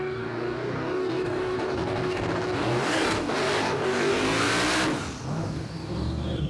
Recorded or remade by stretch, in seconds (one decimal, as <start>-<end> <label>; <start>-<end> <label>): 0.0-4.5 remade; 4.5-5.3 recorded; 5.3-6.5 remade